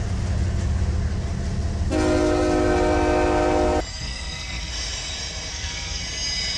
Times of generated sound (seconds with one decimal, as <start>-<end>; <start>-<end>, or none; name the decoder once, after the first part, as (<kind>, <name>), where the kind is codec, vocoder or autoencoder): 3.9-4.7 (codec, SNAC); 5.5-6.0